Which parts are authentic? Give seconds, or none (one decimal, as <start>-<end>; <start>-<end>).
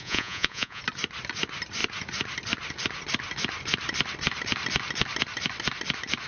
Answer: 0.8-6.3